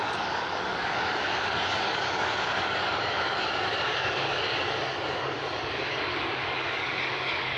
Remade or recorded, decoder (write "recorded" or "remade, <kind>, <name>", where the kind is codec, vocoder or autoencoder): remade, codec, DAC